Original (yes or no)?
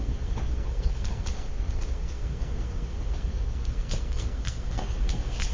no